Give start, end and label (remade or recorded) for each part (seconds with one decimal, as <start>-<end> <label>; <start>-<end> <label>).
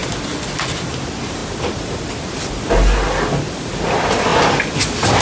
0.0-1.4 recorded; 1.4-2.6 remade; 2.6-4.3 recorded; 4.3-5.2 remade